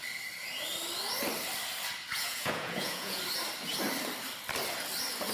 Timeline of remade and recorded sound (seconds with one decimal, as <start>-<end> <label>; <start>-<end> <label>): 0.0-2.1 recorded; 2.1-3.2 remade; 3.2-5.3 recorded

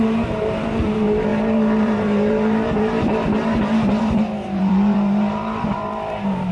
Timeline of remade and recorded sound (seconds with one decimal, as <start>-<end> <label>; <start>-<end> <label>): 0.0-6.5 remade